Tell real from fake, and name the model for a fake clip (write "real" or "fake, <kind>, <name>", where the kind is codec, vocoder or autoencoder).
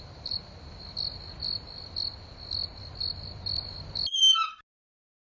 real